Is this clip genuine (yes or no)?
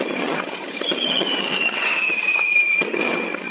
no